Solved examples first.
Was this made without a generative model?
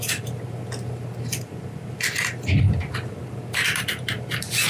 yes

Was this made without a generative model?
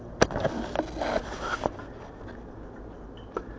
yes